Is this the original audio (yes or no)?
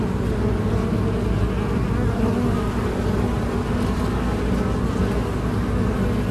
yes